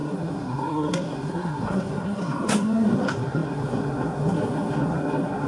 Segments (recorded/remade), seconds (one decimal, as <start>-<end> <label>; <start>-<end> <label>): 0.0-5.5 remade